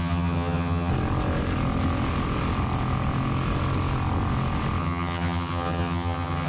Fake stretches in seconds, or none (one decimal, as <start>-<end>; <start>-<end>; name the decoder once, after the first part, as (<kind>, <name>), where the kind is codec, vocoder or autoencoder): 0.0-0.9 (vocoder, HiFi-GAN); 4.8-6.5